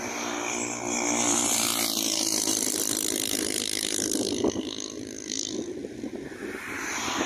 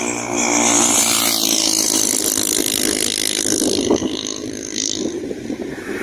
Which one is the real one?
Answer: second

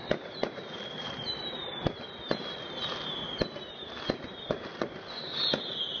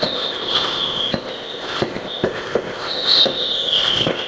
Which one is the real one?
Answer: first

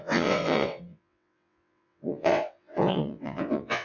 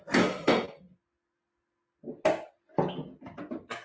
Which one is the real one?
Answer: second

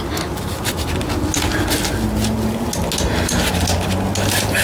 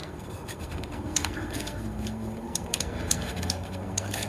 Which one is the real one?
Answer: first